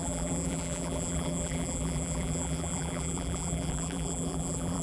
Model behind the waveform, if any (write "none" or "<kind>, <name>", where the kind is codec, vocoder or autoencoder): vocoder, BigVGAN v2